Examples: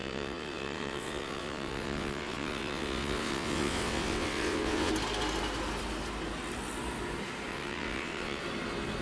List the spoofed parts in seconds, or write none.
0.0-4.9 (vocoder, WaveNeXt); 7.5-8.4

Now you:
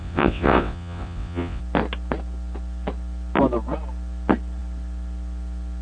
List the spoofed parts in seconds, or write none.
0.0-1.6 (vocoder, WaveNeXt)

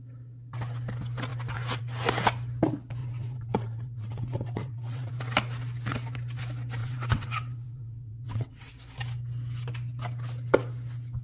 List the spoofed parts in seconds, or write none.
3.0-5.1 (vocoder, WaveNeXt); 6.8-8.7

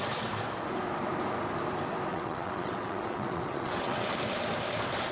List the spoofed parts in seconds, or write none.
2.1-4.1 (vocoder, WaveNeXt)

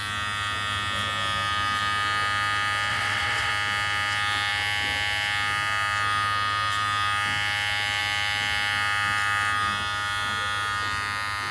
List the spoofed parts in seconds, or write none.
2.9-3.5 (vocoder, WaveNeXt)